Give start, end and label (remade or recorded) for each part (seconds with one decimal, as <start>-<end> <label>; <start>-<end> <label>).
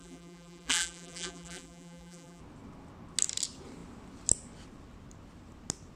0.0-2.4 remade; 2.4-6.0 recorded